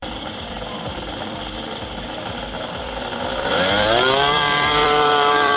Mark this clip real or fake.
fake